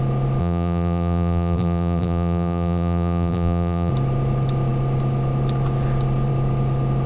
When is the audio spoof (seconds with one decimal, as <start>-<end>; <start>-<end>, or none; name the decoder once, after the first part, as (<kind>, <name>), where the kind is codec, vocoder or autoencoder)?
0.4-3.9 (vocoder, BigVGAN v2)